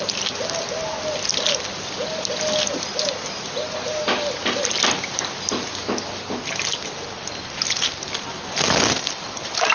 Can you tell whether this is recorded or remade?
recorded